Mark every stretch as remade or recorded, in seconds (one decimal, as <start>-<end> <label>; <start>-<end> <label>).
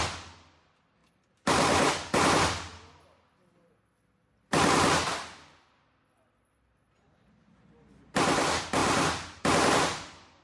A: 0.0-1.0 recorded; 1.0-1.9 remade; 1.9-10.4 recorded